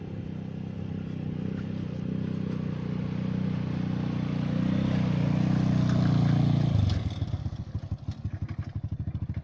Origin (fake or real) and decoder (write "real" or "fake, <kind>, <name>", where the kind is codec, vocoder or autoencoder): real